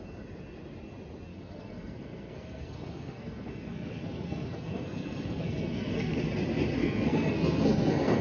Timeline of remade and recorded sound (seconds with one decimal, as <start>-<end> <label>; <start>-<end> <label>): 0.0-1.3 recorded; 1.3-6.2 remade; 6.2-6.8 recorded; 6.8-8.2 remade